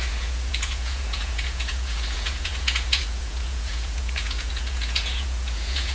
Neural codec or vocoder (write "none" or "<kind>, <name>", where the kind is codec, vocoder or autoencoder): vocoder, Vocos